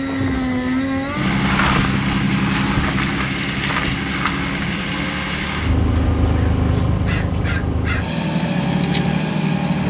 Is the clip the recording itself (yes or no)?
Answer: yes